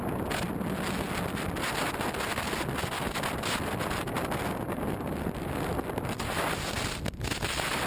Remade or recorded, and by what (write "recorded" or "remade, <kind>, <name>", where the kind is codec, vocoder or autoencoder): recorded